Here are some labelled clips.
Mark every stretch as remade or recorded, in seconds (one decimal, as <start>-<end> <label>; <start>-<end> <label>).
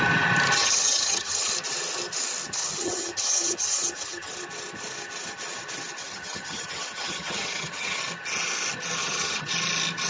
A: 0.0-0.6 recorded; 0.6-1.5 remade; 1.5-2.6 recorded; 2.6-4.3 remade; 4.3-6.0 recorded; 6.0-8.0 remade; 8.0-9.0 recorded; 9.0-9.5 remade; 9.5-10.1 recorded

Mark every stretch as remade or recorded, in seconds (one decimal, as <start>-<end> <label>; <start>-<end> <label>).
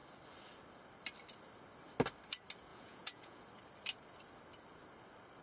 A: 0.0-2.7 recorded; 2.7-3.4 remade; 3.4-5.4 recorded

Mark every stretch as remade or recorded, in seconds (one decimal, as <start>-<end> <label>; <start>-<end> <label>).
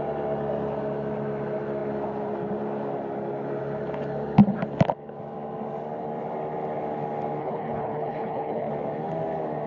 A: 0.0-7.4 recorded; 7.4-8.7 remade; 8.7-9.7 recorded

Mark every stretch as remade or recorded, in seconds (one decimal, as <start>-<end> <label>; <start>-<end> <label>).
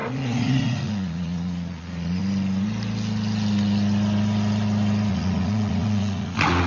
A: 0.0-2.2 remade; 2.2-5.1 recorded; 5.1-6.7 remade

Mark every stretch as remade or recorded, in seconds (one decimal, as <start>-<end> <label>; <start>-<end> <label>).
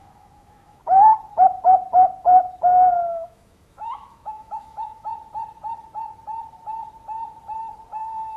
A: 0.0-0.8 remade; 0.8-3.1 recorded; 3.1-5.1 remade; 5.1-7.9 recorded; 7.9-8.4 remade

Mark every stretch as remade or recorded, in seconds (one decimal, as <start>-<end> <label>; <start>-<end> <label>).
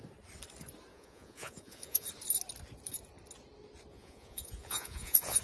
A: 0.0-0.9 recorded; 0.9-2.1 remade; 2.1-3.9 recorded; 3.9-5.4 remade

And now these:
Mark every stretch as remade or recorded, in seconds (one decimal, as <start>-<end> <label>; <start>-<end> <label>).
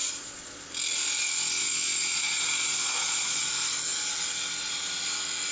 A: 0.0-0.7 remade; 0.7-1.6 recorded; 1.6-3.5 remade; 3.5-5.5 recorded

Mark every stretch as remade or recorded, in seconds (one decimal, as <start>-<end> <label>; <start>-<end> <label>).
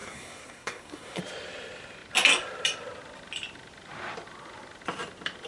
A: 0.0-1.2 remade; 1.2-5.5 recorded